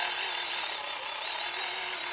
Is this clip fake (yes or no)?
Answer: no